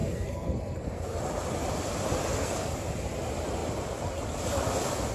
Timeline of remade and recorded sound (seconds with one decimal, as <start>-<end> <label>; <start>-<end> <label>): 0.0-1.2 remade; 1.2-2.3 recorded; 2.3-2.8 remade; 2.8-5.1 recorded